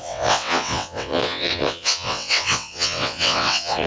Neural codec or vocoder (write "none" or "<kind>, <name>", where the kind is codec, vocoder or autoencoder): vocoder, WaveNeXt